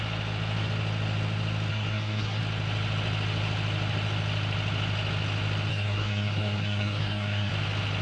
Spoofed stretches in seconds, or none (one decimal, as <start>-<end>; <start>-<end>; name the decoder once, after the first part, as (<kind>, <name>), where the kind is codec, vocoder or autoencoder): 1.7-2.4 (codec, SNAC); 5.7-7.5